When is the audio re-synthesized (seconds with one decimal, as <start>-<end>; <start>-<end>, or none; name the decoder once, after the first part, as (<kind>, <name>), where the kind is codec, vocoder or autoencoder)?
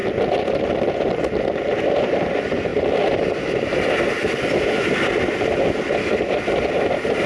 none